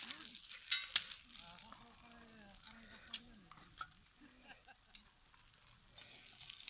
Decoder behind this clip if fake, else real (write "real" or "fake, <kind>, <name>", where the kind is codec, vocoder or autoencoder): real